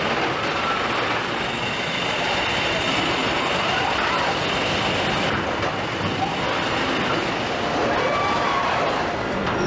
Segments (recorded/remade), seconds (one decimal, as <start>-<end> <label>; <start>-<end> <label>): 0.0-9.7 recorded